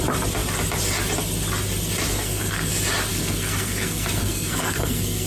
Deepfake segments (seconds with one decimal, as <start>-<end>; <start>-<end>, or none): 2.1-2.7; 3.1-5.3